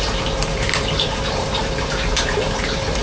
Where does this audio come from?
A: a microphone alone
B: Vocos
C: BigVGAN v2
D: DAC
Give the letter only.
C